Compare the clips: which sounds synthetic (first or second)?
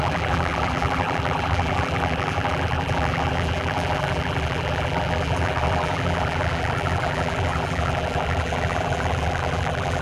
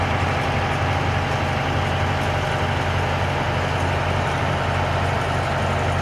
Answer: first